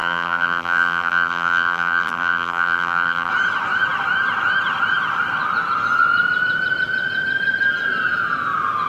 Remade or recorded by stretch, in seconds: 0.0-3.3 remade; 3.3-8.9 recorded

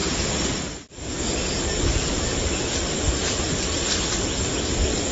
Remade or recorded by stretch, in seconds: 0.0-5.1 recorded

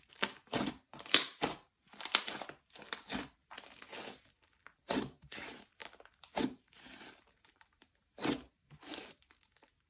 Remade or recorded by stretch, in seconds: 0.0-1.7 remade; 1.7-4.8 recorded; 4.8-5.8 remade; 5.8-6.4 recorded; 6.4-9.9 remade

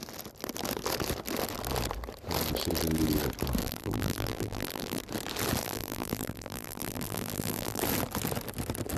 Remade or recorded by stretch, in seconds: 0.0-3.6 recorded; 3.6-5.0 remade; 5.0-5.6 recorded; 5.6-7.8 remade; 7.8-9.0 recorded

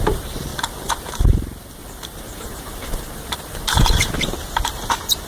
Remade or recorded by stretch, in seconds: 0.0-0.5 remade; 0.5-1.1 recorded; 1.1-5.3 remade